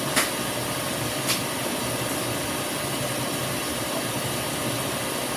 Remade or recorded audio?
recorded